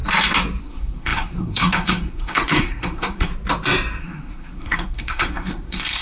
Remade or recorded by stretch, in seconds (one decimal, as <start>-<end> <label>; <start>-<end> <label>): 0.0-0.6 recorded; 0.6-3.3 remade; 3.3-4.0 recorded; 4.0-6.0 remade